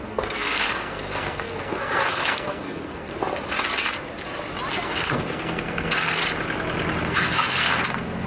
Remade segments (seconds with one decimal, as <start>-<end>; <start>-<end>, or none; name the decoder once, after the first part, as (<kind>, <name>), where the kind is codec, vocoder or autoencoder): 0.0-3.1 (codec, SNAC); 4.7-6.2; 7.0-8.3